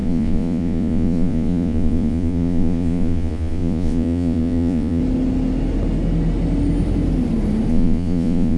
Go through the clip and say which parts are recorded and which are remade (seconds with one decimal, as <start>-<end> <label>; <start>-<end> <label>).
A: 0.0-5.0 remade; 5.0-7.7 recorded; 7.7-8.6 remade

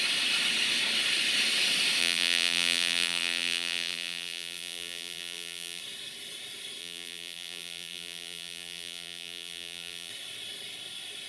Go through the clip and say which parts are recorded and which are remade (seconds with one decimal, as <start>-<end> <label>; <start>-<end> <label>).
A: 0.0-2.0 recorded; 2.0-5.8 remade; 5.8-6.8 recorded; 6.8-10.1 remade; 10.1-11.3 recorded

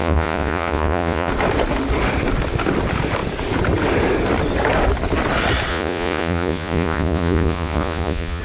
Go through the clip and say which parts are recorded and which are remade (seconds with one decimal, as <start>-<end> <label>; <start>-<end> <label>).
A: 0.0-1.3 remade; 1.3-5.7 recorded; 5.7-8.4 remade

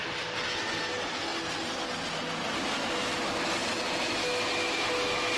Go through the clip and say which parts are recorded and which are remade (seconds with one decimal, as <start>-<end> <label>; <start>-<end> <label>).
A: 0.0-5.4 recorded

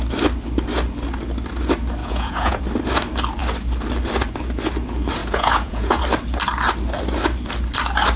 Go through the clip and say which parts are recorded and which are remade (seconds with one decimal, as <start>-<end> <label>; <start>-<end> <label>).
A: 0.0-2.0 recorded; 2.0-2.6 remade; 2.6-5.2 recorded; 5.2-6.0 remade; 6.0-8.2 recorded

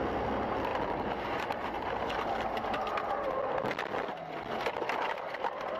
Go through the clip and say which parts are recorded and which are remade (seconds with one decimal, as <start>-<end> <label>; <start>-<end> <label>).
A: 0.0-5.8 recorded

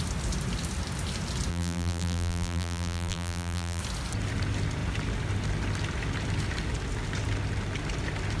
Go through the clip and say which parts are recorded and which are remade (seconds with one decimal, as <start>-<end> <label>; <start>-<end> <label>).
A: 0.0-1.5 recorded; 1.5-3.8 remade; 3.8-8.4 recorded